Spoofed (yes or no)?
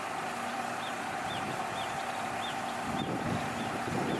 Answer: no